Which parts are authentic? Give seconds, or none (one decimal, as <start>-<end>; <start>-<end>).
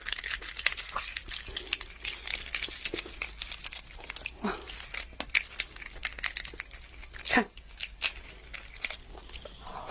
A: 0.0-9.9